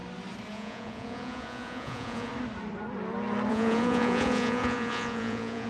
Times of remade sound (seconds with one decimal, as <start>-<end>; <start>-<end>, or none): 0.5-2.3; 3.5-5.7